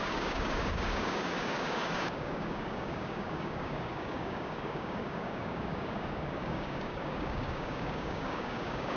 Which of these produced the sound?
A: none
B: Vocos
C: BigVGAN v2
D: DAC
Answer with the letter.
D